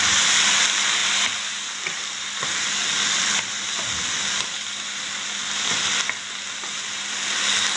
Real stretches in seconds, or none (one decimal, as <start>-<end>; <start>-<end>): 0.0-1.0; 4.8-7.8